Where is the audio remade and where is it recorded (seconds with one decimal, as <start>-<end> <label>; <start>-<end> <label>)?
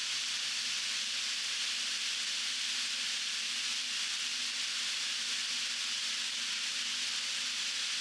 0.0-8.0 recorded